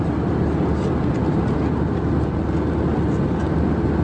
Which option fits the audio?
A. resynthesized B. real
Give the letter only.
B